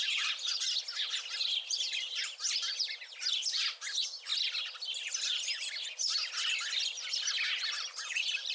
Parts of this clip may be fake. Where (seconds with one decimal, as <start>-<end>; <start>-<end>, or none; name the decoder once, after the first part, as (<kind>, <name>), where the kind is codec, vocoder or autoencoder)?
none